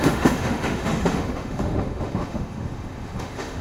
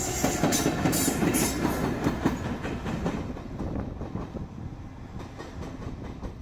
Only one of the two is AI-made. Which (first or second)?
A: first